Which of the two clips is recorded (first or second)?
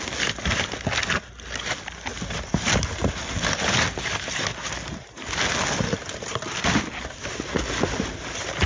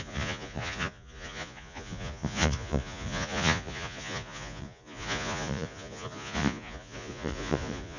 first